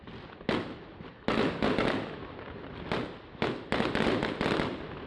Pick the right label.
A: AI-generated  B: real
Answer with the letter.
B